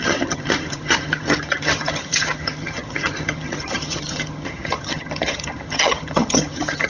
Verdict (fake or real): fake